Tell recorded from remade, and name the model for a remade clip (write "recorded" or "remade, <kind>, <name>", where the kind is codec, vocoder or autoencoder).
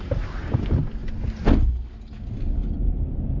recorded